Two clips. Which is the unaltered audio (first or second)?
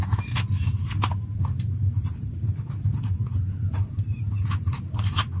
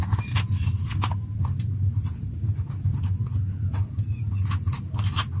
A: second